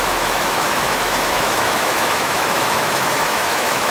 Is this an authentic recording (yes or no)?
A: no